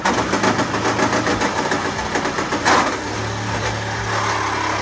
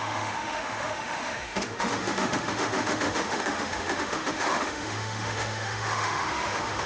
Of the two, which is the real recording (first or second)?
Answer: first